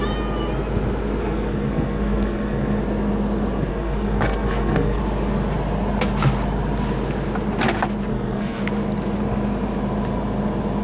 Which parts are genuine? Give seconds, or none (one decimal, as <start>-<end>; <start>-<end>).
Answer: 0.0-1.2; 2.8-3.7; 5.0-8.1; 8.6-10.8